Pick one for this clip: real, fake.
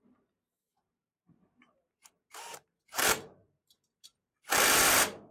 fake